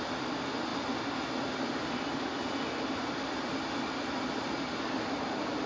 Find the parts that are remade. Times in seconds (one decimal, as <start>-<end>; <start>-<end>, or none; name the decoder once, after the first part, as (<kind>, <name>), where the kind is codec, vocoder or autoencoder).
none